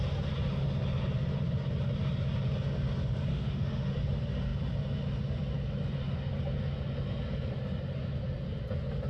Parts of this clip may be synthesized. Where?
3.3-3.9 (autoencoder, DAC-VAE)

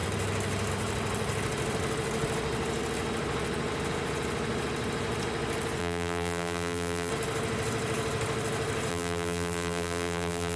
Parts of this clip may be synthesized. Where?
5.8-7.1 (vocoder, BigVGAN v2); 8.9-10.6